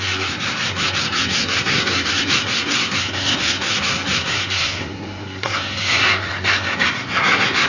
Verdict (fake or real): fake